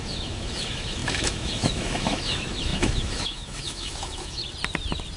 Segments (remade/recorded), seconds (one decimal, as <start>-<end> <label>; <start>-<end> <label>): 0.0-4.4 remade; 4.4-5.2 recorded